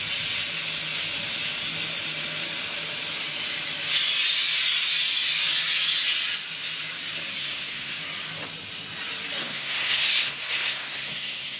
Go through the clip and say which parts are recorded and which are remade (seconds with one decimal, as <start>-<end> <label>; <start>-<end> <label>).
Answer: 0.0-7.4 recorded; 7.4-8.0 remade; 8.0-9.4 recorded; 9.4-11.6 remade

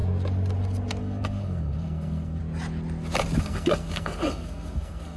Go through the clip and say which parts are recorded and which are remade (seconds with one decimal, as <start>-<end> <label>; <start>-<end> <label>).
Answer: 0.0-1.0 recorded; 1.0-2.4 remade; 2.4-3.4 recorded; 3.4-5.2 remade